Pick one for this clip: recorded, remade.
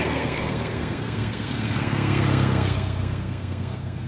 remade